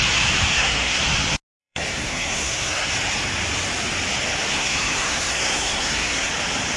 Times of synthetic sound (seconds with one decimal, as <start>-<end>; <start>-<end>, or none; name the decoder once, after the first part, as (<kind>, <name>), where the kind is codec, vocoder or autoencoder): 0.5-1.0 (codec, SNAC); 1.6-2.9; 4.5-6.3